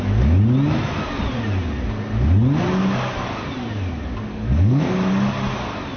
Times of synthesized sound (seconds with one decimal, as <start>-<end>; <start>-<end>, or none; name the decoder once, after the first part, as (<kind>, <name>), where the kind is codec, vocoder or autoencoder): 4.3-4.9 (codec, SNAC)